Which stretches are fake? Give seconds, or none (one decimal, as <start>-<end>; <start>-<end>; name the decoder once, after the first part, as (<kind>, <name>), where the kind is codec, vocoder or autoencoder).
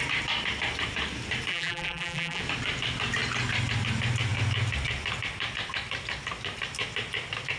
1.5-2.4 (vocoder, BigVGAN v2)